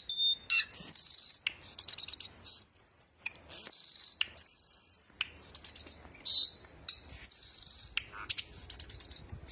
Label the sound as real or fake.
real